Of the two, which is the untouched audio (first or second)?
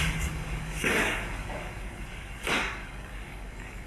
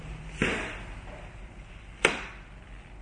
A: second